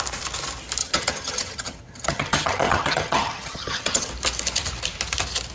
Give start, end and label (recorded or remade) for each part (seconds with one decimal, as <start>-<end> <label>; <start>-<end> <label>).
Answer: 0.0-0.8 recorded; 0.8-4.1 remade; 4.1-5.5 recorded